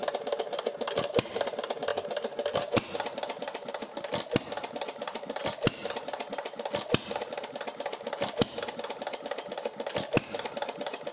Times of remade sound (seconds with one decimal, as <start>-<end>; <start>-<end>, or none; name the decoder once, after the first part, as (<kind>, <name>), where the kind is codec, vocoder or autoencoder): none